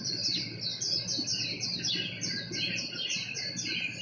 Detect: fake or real real